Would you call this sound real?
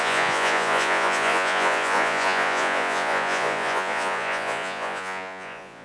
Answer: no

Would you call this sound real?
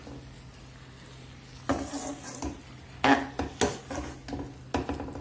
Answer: yes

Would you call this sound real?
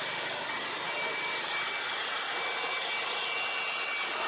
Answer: yes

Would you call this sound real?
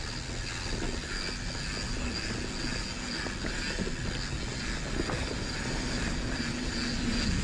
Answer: yes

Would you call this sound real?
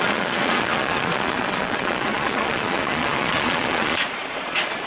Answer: no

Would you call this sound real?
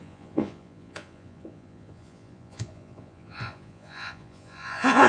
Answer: no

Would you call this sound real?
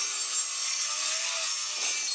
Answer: yes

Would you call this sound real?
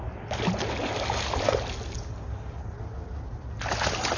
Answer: yes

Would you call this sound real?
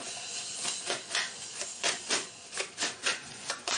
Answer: no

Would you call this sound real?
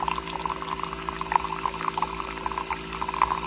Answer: yes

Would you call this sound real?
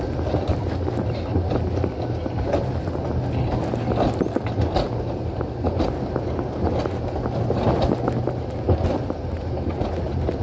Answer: yes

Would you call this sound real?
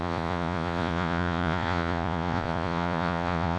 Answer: no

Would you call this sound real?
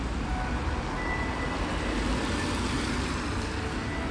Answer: yes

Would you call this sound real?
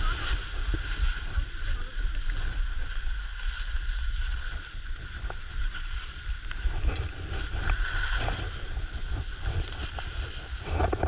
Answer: yes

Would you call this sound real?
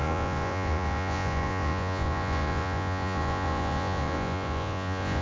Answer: no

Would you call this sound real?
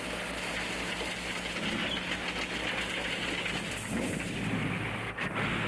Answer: yes